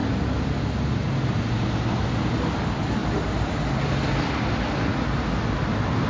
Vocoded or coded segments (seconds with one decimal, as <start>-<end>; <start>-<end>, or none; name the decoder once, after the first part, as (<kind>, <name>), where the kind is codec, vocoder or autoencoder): none